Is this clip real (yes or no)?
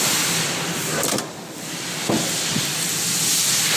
yes